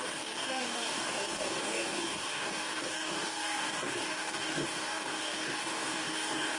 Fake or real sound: fake